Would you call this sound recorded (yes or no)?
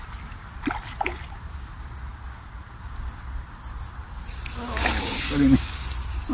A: yes